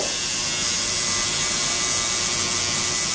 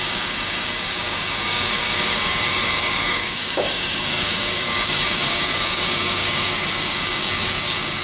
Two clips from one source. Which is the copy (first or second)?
second